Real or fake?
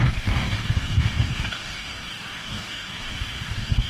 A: fake